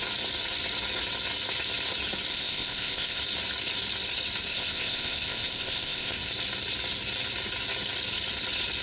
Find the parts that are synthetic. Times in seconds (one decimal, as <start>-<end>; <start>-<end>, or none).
2.3-3.2; 4.5-6.3